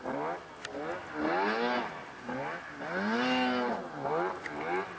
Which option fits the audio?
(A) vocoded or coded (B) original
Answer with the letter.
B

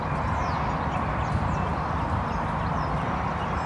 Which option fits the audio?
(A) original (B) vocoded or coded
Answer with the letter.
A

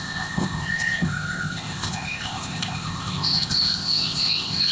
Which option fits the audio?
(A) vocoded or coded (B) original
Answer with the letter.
A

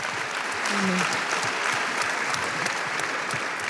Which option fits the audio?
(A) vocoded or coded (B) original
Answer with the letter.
B